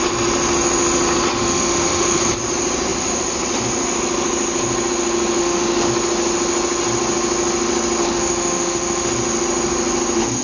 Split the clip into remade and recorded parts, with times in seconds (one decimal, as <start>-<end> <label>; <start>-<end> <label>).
0.0-1.4 recorded; 1.4-2.2 remade; 2.2-5.4 recorded; 5.4-5.9 remade; 5.9-8.0 recorded; 8.0-9.1 remade; 9.1-10.4 recorded